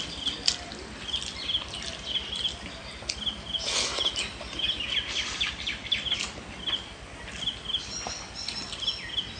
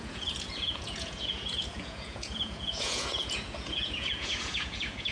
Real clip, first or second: first